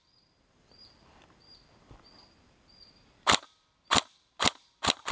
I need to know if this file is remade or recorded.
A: remade